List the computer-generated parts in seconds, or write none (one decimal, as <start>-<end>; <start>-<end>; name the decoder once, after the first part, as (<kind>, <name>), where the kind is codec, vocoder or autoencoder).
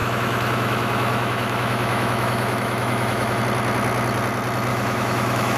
0.0-3.4 (autoencoder, DAC-VAE); 4.7-5.6